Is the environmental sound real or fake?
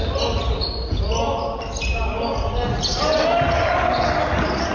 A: real